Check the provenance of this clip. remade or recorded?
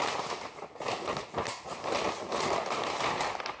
recorded